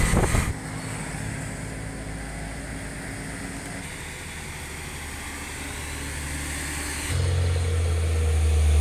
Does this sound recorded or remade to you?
recorded